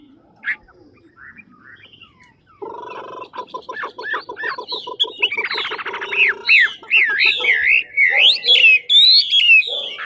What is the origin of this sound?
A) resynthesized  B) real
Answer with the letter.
B